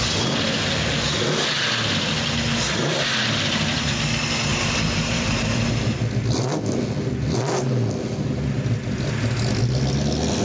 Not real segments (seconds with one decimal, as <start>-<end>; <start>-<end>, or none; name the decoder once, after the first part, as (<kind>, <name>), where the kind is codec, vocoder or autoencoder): 4.5-5.5 (vocoder, BigVGAN v2)